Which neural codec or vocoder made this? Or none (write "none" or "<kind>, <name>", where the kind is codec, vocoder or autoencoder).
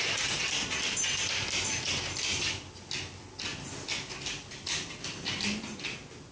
none